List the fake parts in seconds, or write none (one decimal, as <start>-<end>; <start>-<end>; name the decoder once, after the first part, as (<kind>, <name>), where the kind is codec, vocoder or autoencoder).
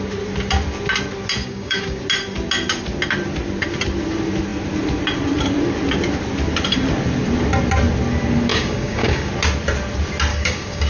1.4-2.0 (codec, DAC); 8.5-9.3; 10.3-10.9